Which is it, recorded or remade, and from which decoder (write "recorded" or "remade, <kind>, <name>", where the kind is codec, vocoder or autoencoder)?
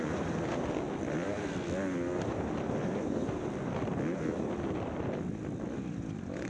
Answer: remade, vocoder, BigVGAN v2